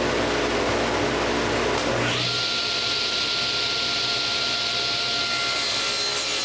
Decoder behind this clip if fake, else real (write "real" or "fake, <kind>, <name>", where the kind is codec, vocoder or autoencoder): real